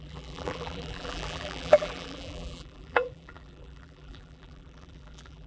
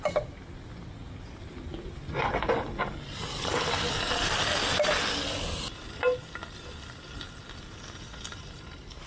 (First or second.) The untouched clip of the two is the second